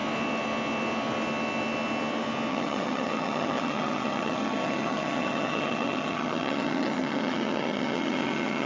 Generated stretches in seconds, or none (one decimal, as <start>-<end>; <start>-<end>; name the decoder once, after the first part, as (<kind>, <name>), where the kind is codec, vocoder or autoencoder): 2.5-8.7 (vocoder, HiFi-GAN)